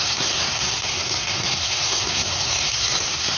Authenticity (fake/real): fake